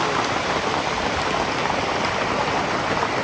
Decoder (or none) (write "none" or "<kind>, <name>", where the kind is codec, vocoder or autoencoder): none